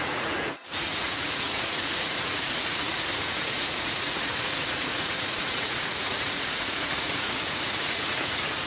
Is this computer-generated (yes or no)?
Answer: yes